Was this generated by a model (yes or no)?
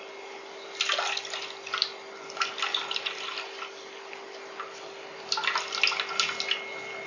no